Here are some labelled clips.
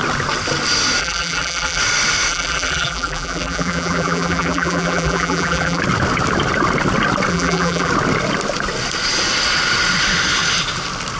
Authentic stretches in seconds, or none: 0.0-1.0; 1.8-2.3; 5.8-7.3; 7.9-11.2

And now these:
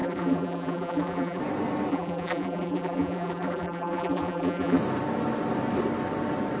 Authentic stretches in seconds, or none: 1.4-1.9; 4.8-6.6

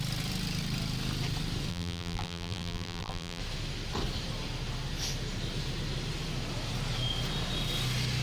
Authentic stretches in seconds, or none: 0.0-1.7; 3.4-8.2